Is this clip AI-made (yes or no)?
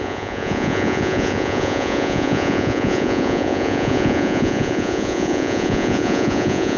yes